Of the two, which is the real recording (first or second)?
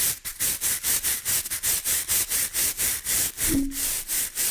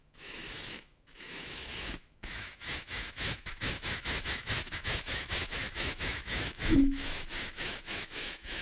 first